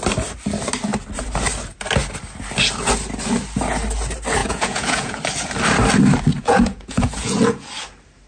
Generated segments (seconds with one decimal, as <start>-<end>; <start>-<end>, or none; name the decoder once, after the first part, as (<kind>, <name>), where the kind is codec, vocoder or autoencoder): 4.4-5.2 (vocoder, Vocos); 6.3-7.7